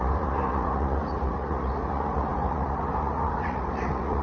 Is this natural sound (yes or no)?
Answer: no